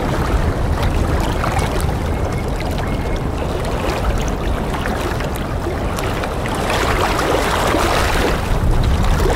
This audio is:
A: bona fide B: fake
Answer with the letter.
A